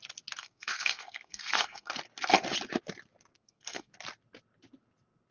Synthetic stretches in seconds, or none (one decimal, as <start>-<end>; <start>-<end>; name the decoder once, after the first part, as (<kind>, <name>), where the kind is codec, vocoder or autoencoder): 0.4-1.9 (codec, SNAC); 3.3-3.9